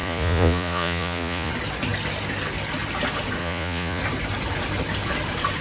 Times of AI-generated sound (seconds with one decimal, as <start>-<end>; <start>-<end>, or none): 0.0-1.5; 3.4-4.0